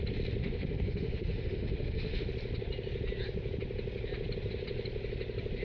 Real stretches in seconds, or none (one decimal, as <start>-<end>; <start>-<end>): 0.0-0.4; 2.3-5.6